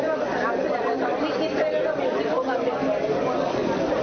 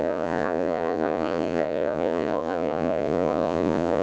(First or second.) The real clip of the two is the first